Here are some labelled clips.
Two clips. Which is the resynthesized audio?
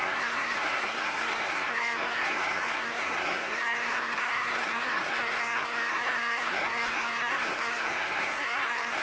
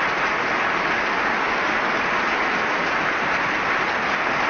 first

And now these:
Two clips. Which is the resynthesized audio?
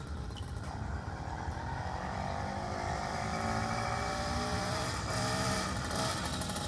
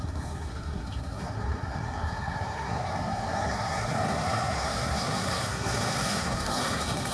second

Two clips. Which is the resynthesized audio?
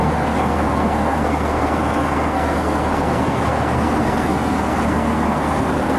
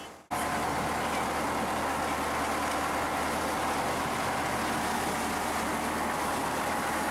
first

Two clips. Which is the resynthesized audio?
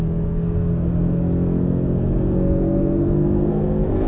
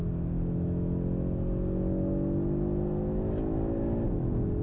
first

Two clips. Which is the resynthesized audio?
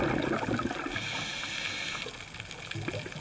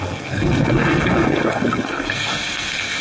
second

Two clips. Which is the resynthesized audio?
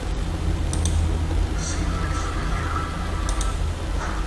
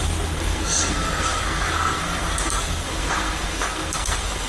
second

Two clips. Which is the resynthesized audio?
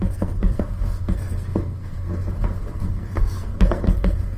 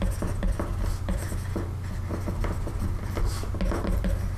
first